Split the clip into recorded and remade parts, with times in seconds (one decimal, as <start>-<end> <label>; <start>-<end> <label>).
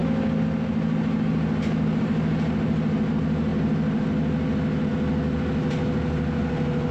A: 0.0-6.9 recorded